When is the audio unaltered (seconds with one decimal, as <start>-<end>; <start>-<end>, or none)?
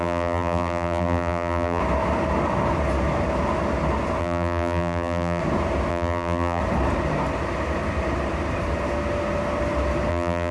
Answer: 1.8-4.2; 5.4-5.9; 6.6-10.1